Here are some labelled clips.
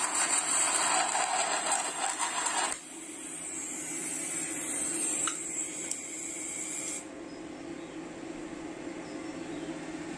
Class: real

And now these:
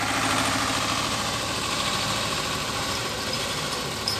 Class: fake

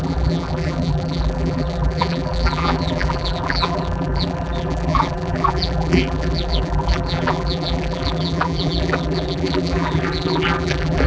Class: fake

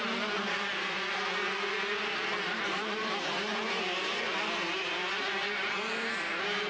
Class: fake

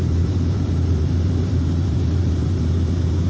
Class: fake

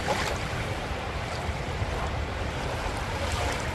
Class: fake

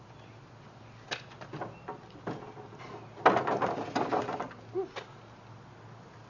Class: real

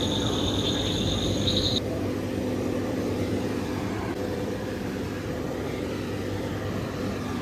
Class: fake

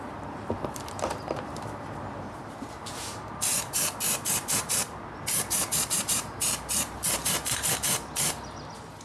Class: fake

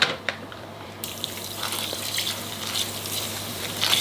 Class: fake